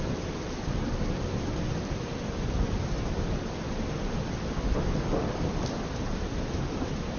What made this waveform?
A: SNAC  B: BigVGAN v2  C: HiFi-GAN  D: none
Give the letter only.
B